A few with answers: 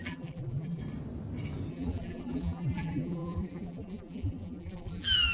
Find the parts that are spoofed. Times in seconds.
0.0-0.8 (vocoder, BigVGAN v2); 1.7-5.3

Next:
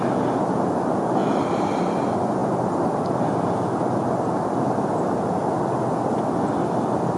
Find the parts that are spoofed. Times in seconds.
1.2-1.8 (vocoder, BigVGAN v2)

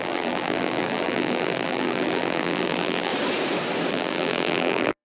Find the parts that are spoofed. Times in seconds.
0.0-3.1 (vocoder, BigVGAN v2); 3.9-5.0

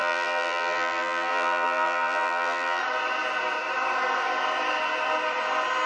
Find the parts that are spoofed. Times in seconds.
0.0-2.8 (vocoder, BigVGAN v2)

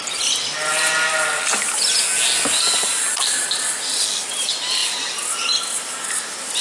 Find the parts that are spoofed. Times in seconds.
none

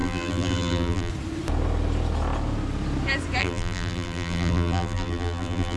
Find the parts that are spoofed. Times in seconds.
0.0-1.1 (vocoder, BigVGAN v2); 3.4-5.8

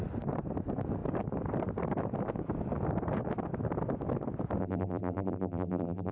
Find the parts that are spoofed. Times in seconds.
4.6-6.1 (vocoder, BigVGAN v2)

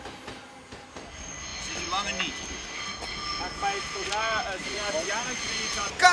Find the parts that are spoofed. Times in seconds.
4.6-5.1 (vocoder, BigVGAN v2)